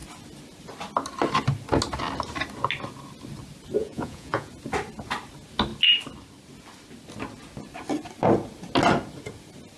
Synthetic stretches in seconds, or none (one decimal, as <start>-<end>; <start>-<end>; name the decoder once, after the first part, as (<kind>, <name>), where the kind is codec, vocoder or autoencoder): 3.8-4.5 (vocoder, Vocos)